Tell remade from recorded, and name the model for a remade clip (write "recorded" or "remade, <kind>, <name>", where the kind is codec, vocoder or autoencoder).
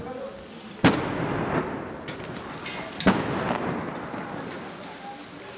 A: recorded